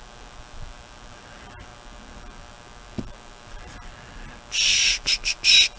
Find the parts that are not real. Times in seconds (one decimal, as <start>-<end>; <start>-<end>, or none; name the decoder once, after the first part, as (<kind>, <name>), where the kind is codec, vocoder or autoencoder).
0.0-1.7 (vocoder, BigVGAN v2); 3.5-3.9